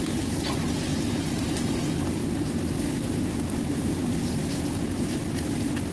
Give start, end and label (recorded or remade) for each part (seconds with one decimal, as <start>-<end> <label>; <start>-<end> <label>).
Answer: 0.0-5.9 recorded